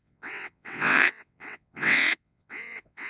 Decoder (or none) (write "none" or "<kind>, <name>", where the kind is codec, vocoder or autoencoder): vocoder, WaveNeXt